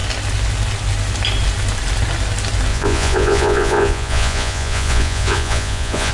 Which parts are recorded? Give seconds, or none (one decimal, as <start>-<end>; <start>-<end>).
0.0-2.7